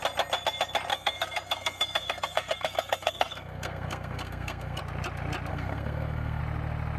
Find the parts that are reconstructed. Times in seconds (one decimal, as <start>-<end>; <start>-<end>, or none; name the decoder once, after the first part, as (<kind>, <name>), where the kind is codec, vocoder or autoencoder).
0.9-4.8 (codec, SNAC); 5.5-6.4